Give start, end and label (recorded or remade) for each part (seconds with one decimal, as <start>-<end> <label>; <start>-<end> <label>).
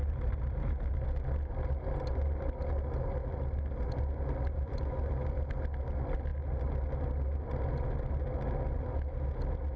0.0-0.9 remade; 0.9-9.8 recorded